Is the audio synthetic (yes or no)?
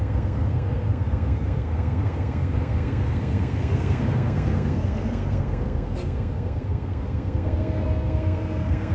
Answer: yes